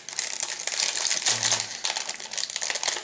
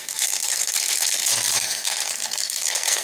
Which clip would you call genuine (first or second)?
first